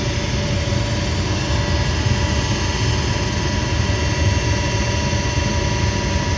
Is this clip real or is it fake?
real